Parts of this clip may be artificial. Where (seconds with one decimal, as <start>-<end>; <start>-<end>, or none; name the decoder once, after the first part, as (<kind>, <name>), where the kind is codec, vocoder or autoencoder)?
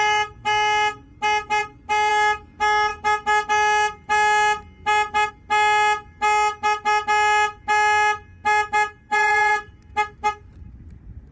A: 9.1-9.7 (vocoder, Vocos)